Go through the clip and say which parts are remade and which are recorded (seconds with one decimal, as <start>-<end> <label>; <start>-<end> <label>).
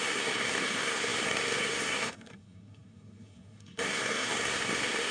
0.0-5.1 remade